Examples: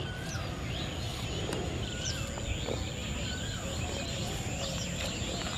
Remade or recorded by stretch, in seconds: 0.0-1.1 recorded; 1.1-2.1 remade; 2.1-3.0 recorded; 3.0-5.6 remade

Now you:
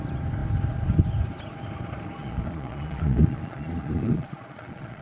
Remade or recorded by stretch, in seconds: 0.0-2.2 recorded; 2.2-5.0 remade